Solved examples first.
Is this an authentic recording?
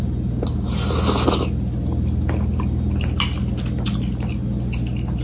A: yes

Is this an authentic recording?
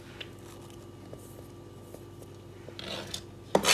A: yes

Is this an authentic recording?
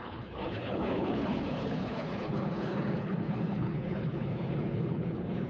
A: no